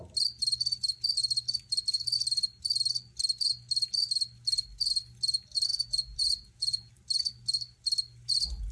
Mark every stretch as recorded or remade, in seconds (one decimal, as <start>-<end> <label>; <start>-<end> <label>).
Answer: 0.0-5.7 recorded; 5.7-6.9 remade; 6.9-8.7 recorded